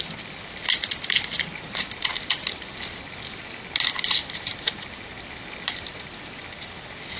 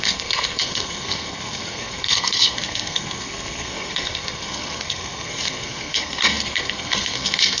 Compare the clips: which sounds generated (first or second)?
second